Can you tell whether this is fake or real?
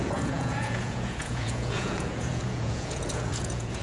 fake